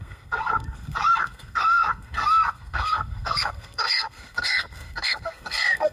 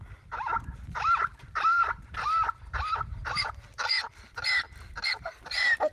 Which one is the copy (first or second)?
first